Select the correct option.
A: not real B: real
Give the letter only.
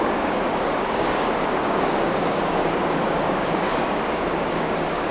A